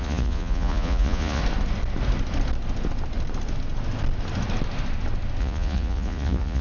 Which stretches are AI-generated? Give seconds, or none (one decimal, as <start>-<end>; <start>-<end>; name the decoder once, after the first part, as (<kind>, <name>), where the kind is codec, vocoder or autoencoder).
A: 0.0-1.4 (vocoder, Vocos); 5.4-6.6

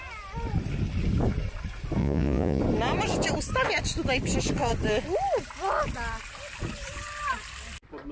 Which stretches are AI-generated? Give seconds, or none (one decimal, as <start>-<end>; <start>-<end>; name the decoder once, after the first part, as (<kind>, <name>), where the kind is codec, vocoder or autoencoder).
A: 2.0-2.6 (vocoder, Vocos)

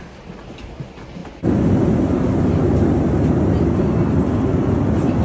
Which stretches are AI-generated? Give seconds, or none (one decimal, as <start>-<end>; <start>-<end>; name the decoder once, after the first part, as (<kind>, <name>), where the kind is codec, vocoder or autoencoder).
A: none

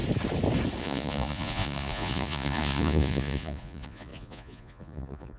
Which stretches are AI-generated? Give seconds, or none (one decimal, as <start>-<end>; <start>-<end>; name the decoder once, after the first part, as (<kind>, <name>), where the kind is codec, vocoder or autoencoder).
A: 0.8-5.4 (vocoder, Vocos)

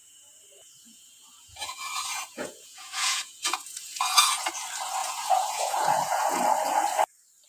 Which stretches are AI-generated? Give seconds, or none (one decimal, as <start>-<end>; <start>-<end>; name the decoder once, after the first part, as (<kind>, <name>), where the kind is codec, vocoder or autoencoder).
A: 0.0-4.5 (vocoder, Vocos); 5.0-6.4